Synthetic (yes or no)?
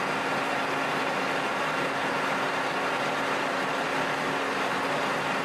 no